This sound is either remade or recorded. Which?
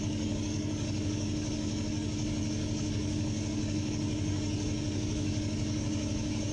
remade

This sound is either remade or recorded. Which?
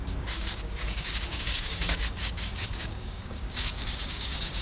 remade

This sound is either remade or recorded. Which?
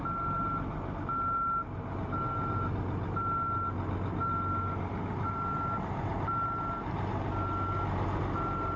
recorded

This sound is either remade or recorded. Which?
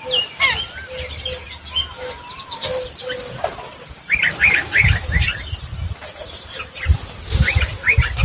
recorded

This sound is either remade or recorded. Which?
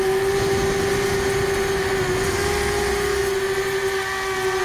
recorded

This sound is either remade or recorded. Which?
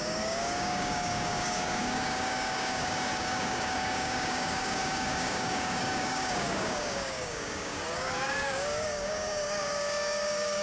remade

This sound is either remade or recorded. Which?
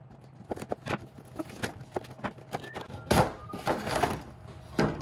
recorded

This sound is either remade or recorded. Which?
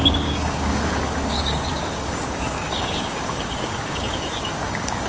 remade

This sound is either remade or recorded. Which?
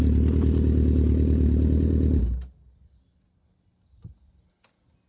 recorded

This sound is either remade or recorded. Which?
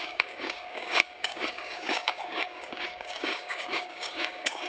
remade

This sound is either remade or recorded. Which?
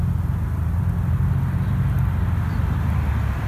recorded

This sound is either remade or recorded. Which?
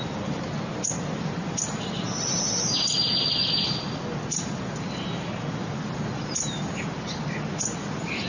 recorded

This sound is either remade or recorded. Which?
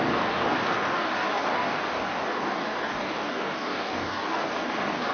remade